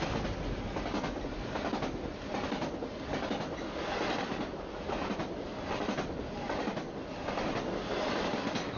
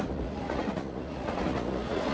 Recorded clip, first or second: first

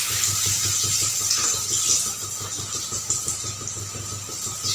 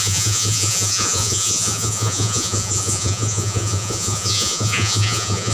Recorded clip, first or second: first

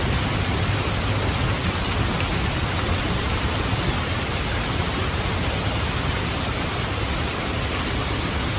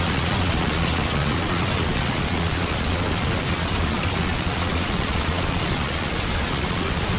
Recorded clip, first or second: first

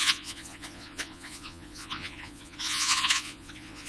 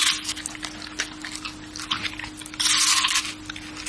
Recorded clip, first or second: second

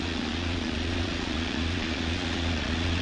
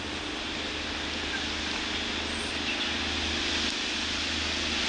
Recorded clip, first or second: second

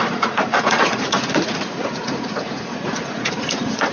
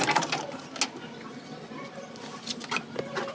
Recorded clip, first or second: second